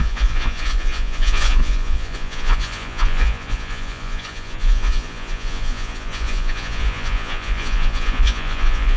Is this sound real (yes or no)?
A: no